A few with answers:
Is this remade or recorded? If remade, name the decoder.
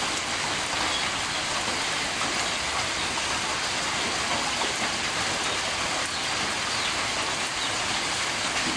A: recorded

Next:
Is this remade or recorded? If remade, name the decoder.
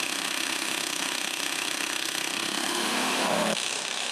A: remade, autoencoder, DAC-VAE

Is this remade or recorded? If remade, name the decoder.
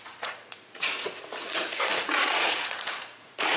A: remade, vocoder, Vocos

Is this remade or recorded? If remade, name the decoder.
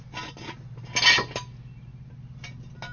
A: recorded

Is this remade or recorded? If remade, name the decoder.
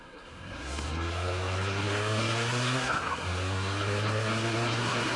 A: remade, codec, SNAC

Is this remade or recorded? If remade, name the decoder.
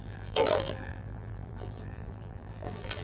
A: remade, vocoder, BigVGAN v2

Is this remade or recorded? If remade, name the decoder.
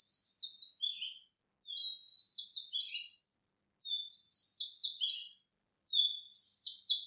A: recorded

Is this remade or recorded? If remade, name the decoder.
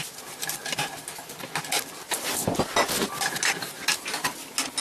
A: recorded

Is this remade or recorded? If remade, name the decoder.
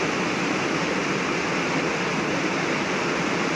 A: recorded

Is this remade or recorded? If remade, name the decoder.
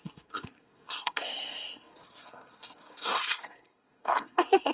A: remade, codec, SNAC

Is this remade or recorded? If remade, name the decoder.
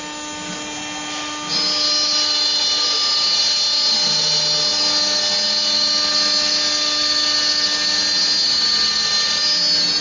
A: recorded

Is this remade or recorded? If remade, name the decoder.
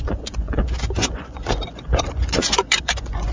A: remade, vocoder, Vocos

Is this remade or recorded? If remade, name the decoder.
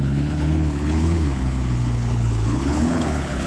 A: remade, codec, HILCodec